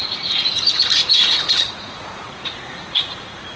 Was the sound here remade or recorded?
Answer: remade